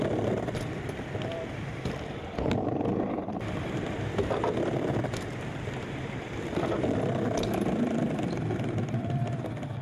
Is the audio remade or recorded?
remade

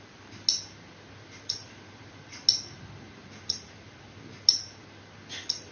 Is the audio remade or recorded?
recorded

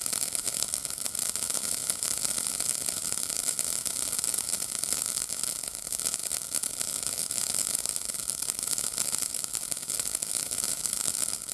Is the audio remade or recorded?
remade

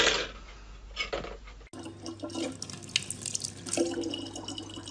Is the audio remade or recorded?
recorded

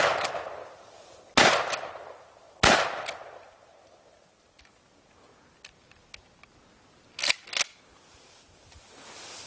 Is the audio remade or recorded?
recorded